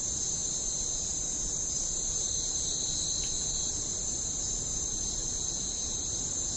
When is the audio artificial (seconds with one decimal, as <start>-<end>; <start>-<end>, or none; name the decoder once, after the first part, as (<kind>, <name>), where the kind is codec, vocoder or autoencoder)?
0.0-5.2 (vocoder, BigVGAN v2); 5.7-6.6

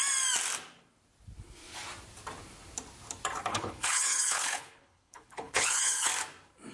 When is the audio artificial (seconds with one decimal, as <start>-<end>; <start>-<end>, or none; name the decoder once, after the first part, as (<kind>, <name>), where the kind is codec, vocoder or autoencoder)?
3.5-6.1 (codec, HILCodec)

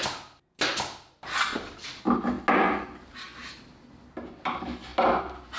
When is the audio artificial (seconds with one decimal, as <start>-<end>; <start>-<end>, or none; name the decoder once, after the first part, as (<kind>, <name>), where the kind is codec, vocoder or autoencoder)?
none

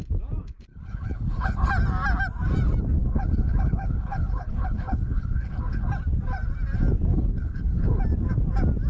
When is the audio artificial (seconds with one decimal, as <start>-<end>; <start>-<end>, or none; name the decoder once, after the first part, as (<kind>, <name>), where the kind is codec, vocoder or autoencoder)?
0.7-1.7 (codec, HILCodec); 3.0-5.9; 7.1-8.0